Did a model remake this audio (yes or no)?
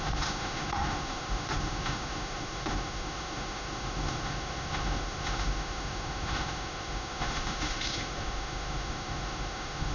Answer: yes